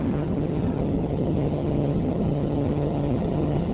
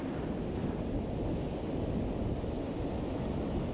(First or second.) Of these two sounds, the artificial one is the first